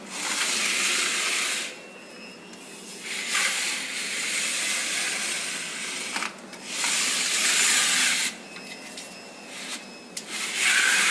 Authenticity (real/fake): real